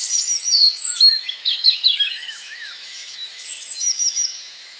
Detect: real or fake fake